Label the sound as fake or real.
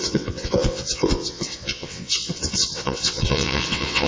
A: fake